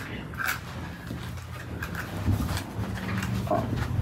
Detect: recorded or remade recorded